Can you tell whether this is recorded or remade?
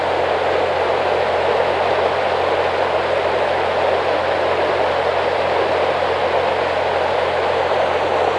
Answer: recorded